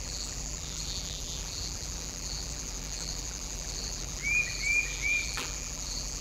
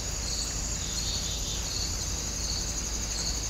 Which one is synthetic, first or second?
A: first